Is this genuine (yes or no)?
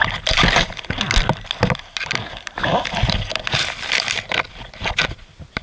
yes